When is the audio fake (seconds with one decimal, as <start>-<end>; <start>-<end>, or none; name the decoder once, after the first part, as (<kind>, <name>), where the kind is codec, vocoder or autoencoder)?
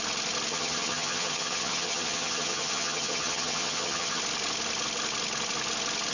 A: 0.5-4.2 (vocoder, HiFi-GAN)